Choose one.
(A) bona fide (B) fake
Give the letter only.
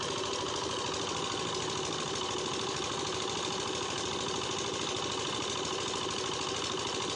A